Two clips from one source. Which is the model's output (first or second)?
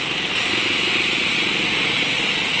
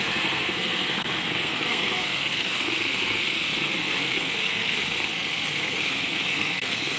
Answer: second